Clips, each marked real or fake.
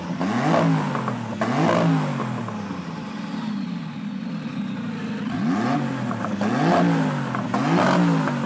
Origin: real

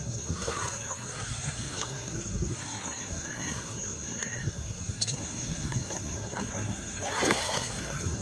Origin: fake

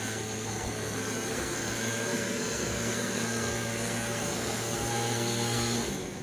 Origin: fake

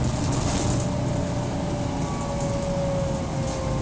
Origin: real